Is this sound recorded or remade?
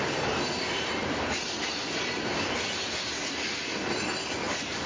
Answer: recorded